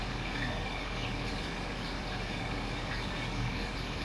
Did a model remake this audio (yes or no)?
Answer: yes